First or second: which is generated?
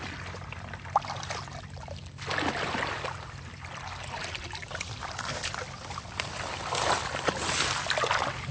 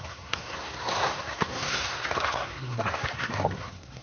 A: second